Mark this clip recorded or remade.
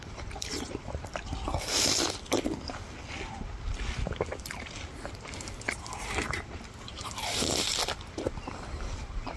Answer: remade